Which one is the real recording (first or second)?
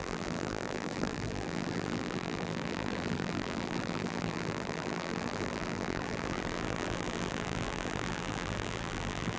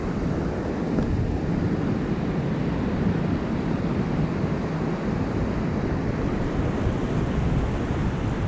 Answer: second